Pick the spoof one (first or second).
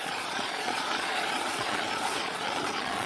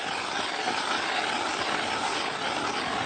first